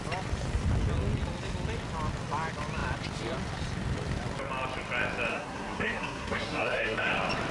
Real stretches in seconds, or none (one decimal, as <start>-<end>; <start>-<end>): 0.0-5.3; 7.1-7.5